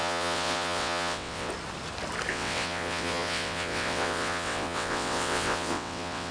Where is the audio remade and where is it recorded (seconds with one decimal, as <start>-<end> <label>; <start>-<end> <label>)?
0.0-1.5 remade; 1.5-2.3 recorded; 2.3-6.3 remade